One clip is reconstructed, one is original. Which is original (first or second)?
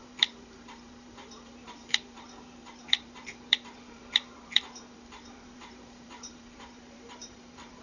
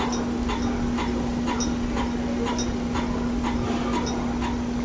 second